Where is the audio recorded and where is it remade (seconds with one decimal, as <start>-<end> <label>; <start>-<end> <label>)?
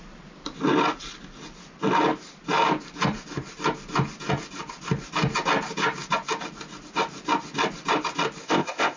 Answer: 0.0-8.4 recorded; 8.4-9.0 remade